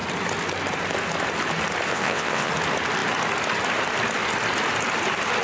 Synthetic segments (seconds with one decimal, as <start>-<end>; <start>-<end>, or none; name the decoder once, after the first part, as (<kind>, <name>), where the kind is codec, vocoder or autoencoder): 1.9-2.5 (vocoder, WaveNeXt)